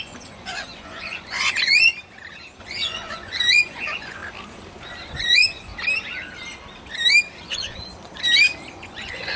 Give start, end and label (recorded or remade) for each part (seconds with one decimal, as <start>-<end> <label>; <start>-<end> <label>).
0.0-1.9 remade; 1.9-2.6 recorded; 2.6-4.2 remade; 4.2-5.1 recorded; 5.1-5.7 remade; 5.7-7.4 recorded; 7.4-7.9 remade; 7.9-8.7 recorded; 8.7-9.4 remade